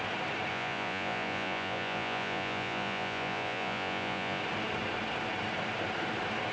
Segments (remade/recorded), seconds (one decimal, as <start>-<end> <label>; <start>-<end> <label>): 0.0-0.5 recorded; 0.5-4.4 remade; 4.4-6.5 recorded